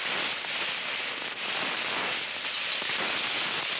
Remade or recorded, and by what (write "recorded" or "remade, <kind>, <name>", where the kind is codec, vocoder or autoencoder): recorded